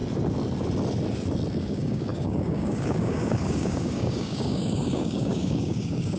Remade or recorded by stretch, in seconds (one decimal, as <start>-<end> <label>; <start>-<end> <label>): 0.0-1.5 recorded; 1.5-6.2 remade